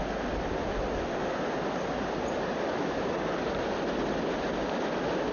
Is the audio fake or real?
real